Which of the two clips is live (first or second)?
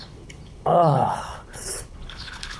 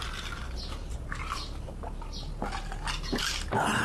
second